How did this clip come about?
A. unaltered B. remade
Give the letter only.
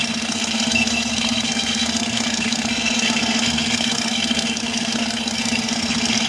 B